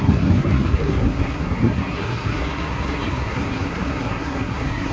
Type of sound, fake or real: fake